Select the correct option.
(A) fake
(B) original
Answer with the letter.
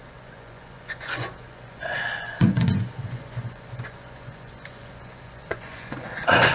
A